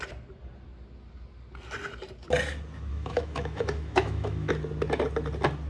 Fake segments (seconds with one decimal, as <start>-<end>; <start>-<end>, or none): 2.9-4.5